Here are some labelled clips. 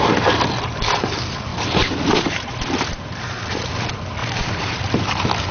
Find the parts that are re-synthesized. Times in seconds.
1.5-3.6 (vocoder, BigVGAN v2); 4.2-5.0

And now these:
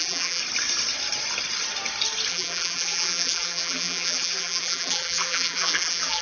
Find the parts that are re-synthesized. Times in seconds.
0.0-0.4 (vocoder, BigVGAN v2); 2.3-6.2

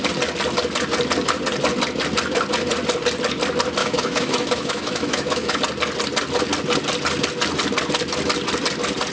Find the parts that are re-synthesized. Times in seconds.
3.8-5.6 (autoencoder, DAC-VAE)

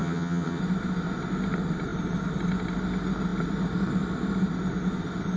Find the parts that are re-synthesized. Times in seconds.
0.0-0.6 (vocoder, HiFi-GAN)

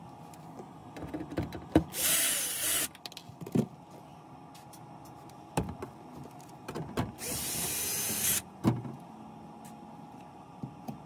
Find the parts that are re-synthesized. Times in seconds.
0.8-1.8 (vocoder, BigVGAN v2)

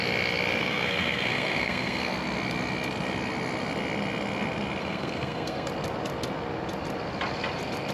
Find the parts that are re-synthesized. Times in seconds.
0.6-2.1 (codec, SNAC); 4.8-5.7

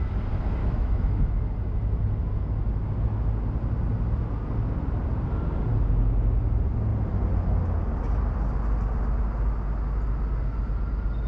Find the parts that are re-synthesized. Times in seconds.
0.6-1.4 (autoencoder, DAC-VAE)

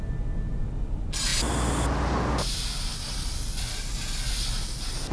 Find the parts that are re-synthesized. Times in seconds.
none